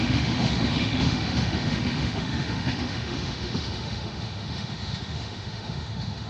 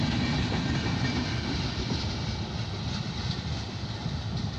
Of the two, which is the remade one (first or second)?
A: first